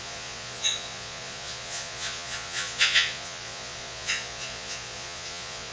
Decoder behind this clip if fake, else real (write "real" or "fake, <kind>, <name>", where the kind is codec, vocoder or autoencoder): fake, vocoder, Vocos